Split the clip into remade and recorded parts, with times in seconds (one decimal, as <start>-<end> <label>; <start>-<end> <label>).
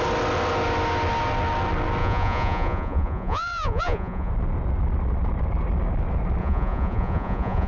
0.0-2.0 recorded; 2.0-4.3 remade; 4.3-6.4 recorded; 6.4-7.7 remade